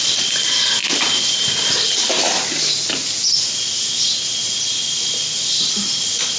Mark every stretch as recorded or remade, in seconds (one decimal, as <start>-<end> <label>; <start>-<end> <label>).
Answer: 0.0-6.4 recorded